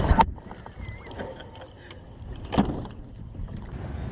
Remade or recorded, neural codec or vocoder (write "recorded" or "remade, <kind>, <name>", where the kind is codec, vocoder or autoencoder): recorded